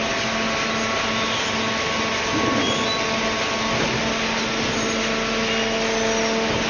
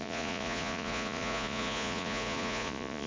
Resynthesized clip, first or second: second